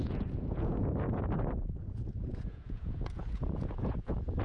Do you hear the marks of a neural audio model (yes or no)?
yes